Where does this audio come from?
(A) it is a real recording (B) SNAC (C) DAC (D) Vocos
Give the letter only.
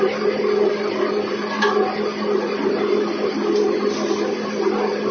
A